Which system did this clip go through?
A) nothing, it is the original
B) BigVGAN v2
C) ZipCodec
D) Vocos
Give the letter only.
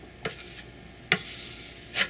A